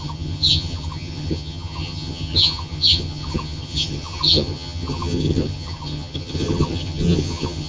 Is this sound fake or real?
fake